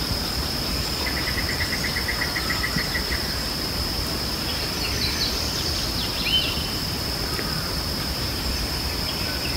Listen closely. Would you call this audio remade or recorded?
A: recorded